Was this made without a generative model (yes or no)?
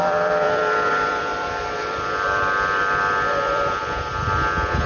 no